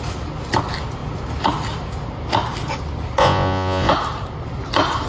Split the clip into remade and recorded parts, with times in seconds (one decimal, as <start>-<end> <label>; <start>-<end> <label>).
0.0-3.2 recorded; 3.2-3.9 remade; 3.9-5.1 recorded